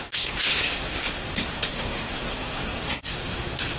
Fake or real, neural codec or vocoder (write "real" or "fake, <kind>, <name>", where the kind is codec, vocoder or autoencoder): fake, codec, SNAC